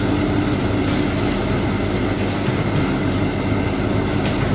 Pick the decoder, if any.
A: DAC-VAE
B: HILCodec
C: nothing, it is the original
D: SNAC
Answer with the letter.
C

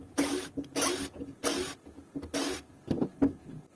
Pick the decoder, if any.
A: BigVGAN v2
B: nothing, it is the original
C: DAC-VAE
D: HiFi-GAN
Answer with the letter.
B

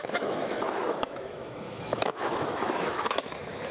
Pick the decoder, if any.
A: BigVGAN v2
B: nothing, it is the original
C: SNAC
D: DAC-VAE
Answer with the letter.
D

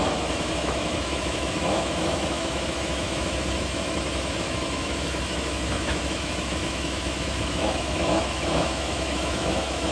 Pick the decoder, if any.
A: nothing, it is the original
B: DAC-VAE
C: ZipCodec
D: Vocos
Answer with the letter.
B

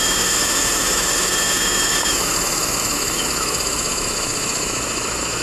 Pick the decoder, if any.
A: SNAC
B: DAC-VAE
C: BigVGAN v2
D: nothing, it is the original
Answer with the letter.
B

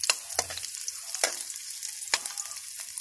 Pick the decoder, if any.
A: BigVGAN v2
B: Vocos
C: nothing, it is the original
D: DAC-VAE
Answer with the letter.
C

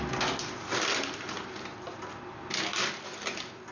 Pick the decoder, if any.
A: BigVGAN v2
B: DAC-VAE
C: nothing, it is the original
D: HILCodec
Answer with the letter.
C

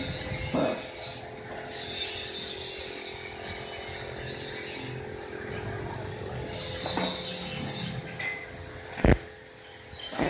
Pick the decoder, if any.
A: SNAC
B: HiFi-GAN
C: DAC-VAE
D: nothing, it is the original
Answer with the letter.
D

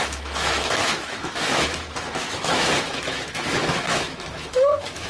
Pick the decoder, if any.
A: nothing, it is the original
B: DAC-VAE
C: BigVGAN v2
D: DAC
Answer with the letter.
B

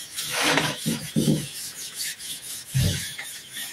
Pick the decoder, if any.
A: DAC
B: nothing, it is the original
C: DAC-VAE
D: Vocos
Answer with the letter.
C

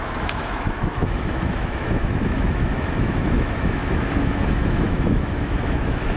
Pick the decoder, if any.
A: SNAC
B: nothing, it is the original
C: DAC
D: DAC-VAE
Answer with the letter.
D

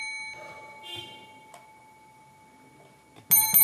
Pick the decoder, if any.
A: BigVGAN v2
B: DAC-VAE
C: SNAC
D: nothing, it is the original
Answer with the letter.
D